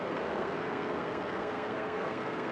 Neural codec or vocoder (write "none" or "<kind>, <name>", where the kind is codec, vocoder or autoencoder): codec, SNAC